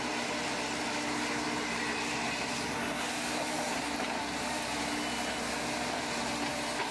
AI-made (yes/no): no